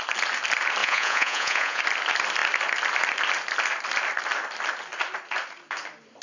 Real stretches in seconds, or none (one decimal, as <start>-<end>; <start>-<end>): 0.0-0.8; 1.8-6.2